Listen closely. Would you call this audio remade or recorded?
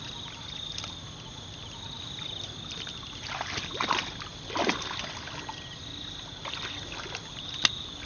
recorded